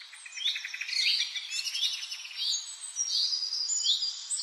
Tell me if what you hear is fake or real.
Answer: real